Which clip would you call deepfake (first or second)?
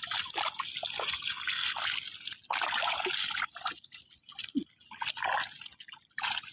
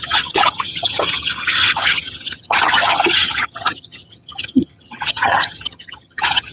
second